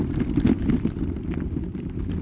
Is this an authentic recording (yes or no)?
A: yes